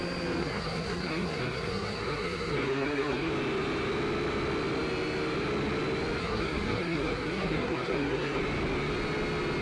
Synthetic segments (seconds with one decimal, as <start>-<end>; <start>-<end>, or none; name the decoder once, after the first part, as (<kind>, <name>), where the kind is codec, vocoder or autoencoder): 0.4-3.3 (codec, SNAC); 6.2-8.4